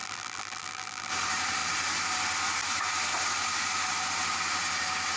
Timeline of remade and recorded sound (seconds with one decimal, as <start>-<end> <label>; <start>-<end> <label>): 0.0-1.1 remade; 1.1-5.2 recorded